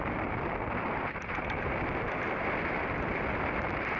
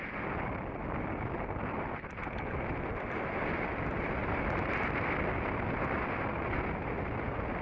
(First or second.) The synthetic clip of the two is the first